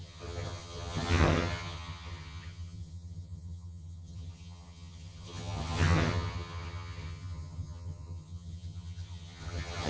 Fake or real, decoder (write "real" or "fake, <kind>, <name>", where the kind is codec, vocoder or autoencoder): fake, vocoder, HiFi-GAN